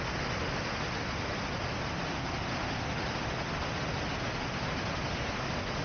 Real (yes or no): yes